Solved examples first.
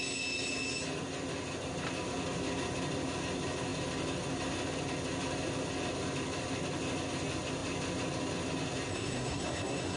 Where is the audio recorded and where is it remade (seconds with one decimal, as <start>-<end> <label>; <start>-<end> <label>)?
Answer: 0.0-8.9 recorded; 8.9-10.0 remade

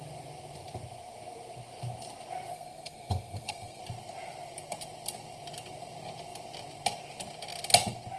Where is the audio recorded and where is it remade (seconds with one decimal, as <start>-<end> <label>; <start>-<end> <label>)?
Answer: 0.0-2.5 recorded; 2.5-3.8 remade; 3.8-8.2 recorded

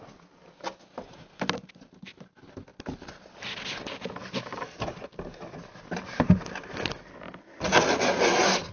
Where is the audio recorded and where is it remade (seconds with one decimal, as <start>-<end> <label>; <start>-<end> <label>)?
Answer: 0.0-8.7 recorded